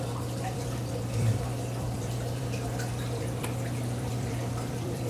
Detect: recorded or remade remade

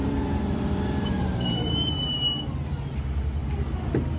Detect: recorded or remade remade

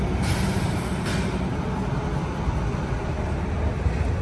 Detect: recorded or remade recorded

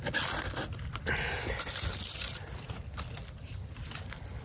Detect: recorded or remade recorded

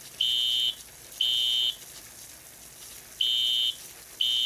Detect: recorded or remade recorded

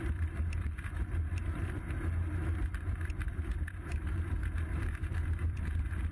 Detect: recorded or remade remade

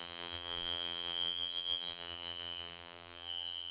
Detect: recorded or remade remade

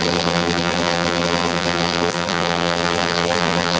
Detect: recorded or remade remade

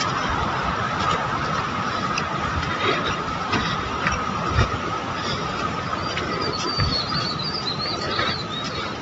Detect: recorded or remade remade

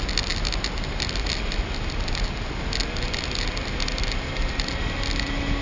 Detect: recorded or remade recorded